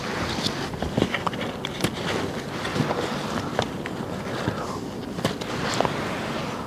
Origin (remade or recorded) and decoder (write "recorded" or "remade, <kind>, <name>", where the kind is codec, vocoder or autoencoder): recorded